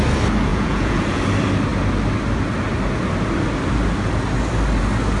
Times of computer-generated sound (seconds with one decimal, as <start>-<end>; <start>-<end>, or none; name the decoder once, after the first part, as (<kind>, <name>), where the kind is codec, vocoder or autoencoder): 0.5-1.2 (vocoder, Vocos)